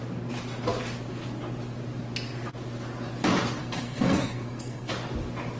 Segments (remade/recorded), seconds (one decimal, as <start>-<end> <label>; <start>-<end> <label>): 0.0-3.6 recorded; 3.6-4.9 remade; 4.9-5.6 recorded